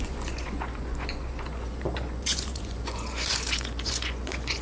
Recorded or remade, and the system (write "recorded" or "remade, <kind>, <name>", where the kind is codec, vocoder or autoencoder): remade, vocoder, Vocos